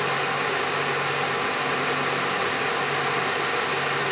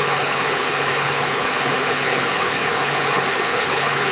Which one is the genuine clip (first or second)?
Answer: first